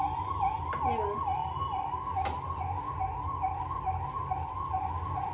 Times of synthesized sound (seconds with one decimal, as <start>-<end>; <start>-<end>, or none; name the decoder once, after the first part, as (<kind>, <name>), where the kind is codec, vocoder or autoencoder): none